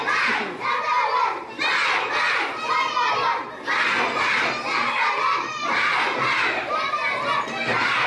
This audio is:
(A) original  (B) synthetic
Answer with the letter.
A